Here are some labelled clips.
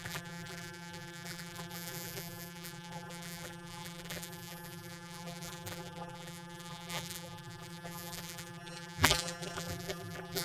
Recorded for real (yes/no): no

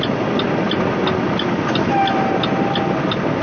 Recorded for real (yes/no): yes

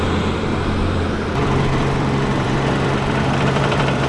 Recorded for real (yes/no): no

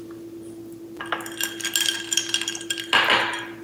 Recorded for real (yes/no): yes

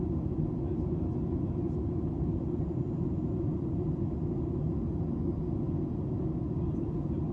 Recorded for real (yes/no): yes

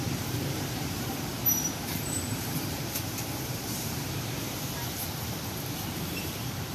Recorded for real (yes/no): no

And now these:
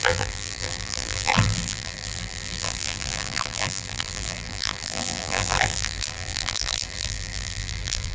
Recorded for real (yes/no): no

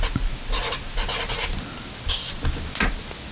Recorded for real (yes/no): yes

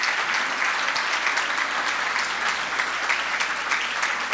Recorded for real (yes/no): yes